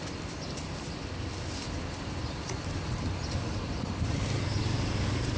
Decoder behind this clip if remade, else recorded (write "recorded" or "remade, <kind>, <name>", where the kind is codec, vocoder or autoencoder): recorded